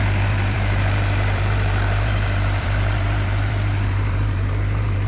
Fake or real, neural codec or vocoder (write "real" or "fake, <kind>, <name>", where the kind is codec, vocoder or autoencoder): fake, vocoder, BigVGAN v2